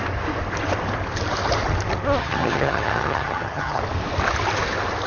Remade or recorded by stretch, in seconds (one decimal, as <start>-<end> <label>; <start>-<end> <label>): 0.0-2.2 recorded; 2.2-3.8 remade; 3.8-5.1 recorded